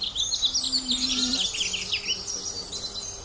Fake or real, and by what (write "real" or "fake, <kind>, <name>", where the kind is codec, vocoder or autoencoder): real